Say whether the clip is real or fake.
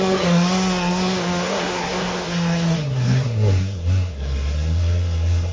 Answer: fake